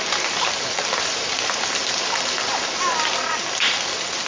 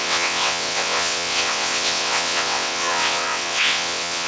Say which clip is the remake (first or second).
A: second